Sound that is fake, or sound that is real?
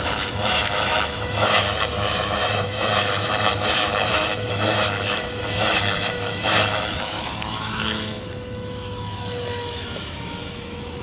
fake